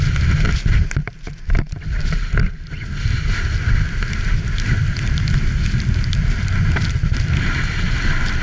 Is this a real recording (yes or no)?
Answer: yes